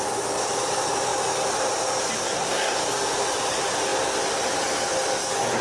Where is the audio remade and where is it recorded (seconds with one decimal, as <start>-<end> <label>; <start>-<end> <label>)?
0.0-2.2 recorded; 2.2-2.8 remade; 2.8-5.6 recorded